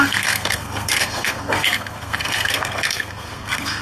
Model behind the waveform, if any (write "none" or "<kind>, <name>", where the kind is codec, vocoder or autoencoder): codec, SNAC